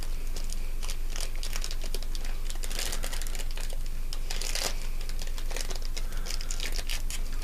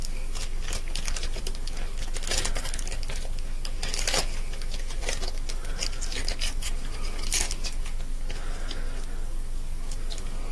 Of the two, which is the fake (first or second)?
second